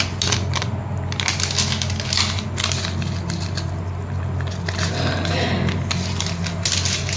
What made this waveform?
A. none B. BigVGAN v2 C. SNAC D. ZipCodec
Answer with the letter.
A